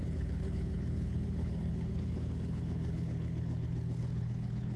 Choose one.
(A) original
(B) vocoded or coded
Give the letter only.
B